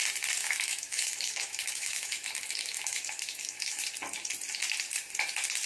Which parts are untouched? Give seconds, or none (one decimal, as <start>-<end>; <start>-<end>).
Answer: 0.0-0.4; 3.8-5.7